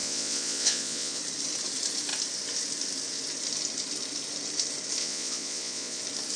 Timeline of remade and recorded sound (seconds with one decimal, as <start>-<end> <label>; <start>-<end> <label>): 0.0-1.2 remade; 1.2-5.0 recorded; 5.0-6.0 remade; 6.0-6.4 recorded